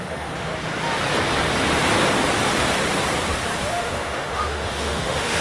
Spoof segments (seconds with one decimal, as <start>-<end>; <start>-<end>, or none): 0.0-0.5; 3.7-5.4